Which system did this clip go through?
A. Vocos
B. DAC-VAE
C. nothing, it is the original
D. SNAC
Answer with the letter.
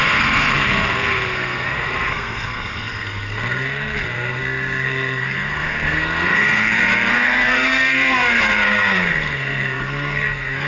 D